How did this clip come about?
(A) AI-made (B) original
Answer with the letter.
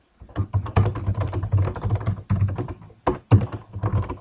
B